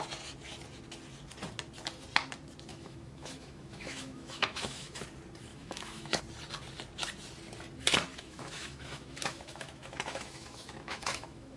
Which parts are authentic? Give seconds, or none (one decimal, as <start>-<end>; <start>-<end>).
0.0-2.7; 5.0-5.5; 6.2-8.1